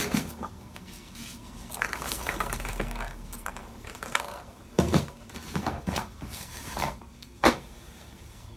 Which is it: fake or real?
fake